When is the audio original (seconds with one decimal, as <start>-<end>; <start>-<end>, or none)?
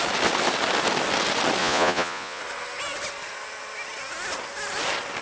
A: 0.0-1.6; 2.4-5.2